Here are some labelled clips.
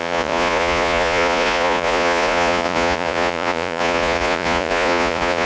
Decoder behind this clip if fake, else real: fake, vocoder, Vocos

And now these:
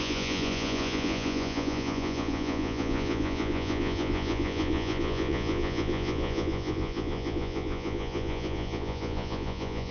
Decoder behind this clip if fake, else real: fake, vocoder, Vocos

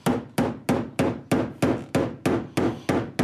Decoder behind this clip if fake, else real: real